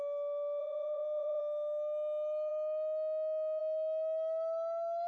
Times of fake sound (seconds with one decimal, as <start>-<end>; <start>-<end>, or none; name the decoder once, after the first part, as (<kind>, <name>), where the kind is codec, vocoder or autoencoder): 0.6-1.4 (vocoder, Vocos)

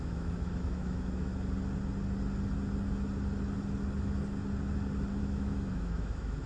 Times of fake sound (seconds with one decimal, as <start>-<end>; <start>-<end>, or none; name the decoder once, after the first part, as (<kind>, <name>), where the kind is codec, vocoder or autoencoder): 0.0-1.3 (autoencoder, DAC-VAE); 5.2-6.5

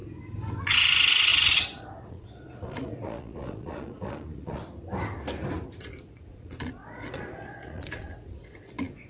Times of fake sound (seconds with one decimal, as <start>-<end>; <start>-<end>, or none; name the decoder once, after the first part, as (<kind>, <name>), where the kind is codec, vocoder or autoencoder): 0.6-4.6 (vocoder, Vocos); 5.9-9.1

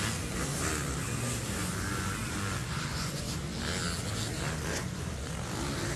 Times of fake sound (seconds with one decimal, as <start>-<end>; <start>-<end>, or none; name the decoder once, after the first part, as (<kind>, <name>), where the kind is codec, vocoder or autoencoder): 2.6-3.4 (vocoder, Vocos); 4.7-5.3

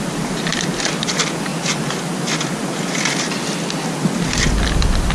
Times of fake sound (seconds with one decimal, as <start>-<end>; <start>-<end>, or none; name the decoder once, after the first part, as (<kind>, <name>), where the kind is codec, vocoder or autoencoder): 0.0-1.5 (vocoder, BigVGAN v2); 4.6-5.1

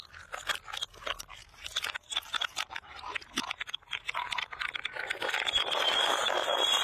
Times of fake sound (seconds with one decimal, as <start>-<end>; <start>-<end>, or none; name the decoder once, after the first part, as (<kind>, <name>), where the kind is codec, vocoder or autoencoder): 1.4-5.3 (vocoder, BigVGAN v2)

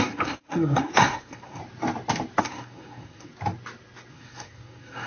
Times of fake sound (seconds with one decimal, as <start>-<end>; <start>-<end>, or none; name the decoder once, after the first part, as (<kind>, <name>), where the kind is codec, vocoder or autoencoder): 0.0-1.6 (codec, SNAC); 2.4-3.3; 4.1-5.1

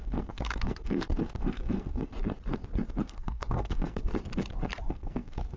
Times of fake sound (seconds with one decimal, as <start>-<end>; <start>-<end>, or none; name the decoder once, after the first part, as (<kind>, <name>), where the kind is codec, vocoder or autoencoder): 0.0-2.1 (codec, SNAC); 2.9-4.1; 4.9-5.6